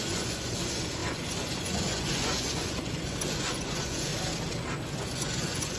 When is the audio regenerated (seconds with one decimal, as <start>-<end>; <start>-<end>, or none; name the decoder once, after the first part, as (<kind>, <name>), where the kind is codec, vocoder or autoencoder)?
0.0-4.1 (vocoder, Vocos); 4.9-5.8